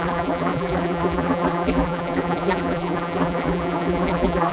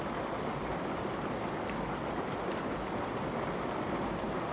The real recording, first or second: second